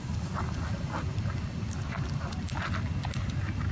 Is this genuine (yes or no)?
yes